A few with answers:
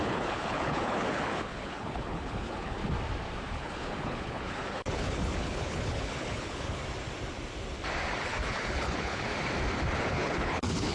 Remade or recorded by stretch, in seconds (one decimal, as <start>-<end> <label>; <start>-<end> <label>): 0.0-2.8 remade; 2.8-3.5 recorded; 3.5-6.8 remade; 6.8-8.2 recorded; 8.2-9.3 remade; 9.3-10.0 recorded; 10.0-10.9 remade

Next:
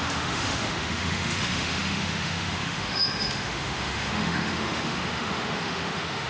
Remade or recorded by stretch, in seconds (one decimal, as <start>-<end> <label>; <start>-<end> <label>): 0.0-6.3 remade

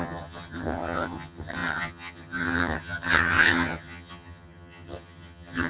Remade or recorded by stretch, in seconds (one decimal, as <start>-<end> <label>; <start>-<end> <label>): 0.0-5.7 remade

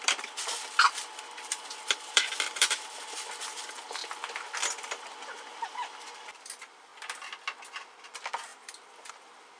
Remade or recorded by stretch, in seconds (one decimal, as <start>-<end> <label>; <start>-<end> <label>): 0.0-4.0 remade; 4.0-5.1 recorded; 5.1-6.9 remade; 6.9-8.0 recorded; 8.0-9.6 remade

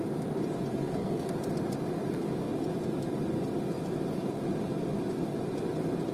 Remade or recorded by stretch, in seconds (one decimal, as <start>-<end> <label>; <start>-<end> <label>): 0.0-0.7 recorded; 0.7-1.4 remade; 1.4-6.1 recorded

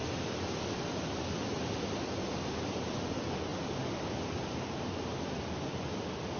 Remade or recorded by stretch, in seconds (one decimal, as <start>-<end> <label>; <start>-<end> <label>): 0.0-6.4 recorded

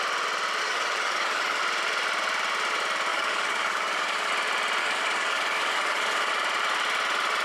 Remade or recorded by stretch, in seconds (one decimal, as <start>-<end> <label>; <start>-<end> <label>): 0.0-0.6 recorded; 0.6-1.6 remade; 1.6-3.1 recorded; 3.1-4.3 remade; 4.3-4.8 recorded; 4.8-6.3 remade; 6.3-7.4 recorded

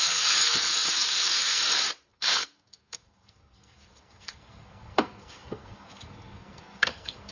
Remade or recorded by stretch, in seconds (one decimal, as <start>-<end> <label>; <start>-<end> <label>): 0.0-1.6 remade; 1.6-2.1 recorded; 2.1-7.3 remade